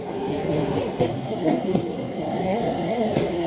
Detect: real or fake fake